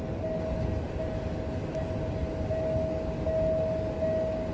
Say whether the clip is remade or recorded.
recorded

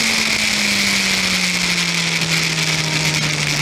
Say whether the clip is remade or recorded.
recorded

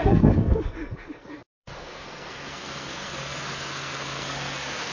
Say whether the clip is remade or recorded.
remade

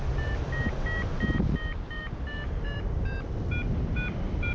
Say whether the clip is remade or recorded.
recorded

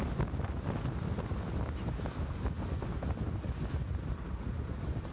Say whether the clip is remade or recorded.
recorded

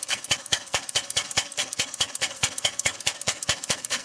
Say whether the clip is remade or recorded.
remade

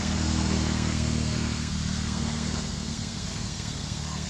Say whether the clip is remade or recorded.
remade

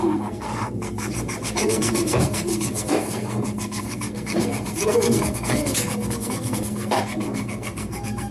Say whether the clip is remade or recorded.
remade